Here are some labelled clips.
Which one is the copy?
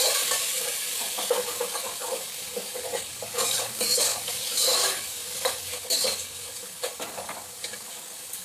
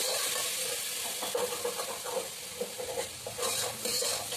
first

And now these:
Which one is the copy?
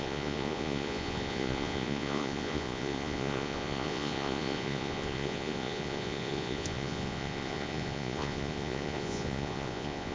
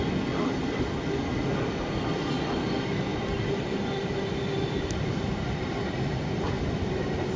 first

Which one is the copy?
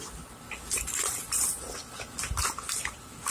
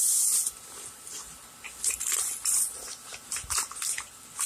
second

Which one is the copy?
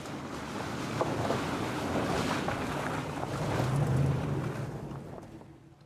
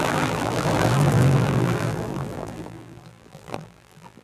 second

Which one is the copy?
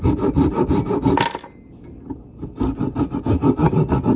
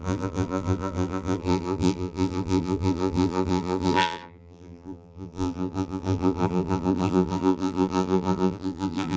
second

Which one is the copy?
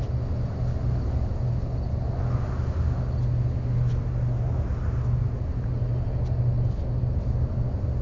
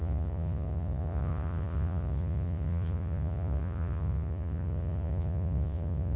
second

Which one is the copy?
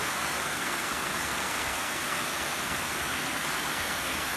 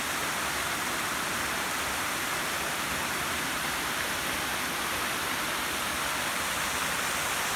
first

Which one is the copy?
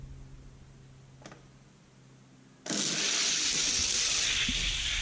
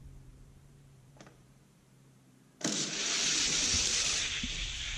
second